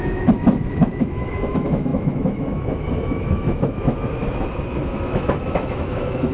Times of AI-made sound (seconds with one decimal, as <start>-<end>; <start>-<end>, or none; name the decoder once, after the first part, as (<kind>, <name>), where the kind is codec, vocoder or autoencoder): 0.0-4.2 (autoencoder, DAC-VAE); 4.8-6.3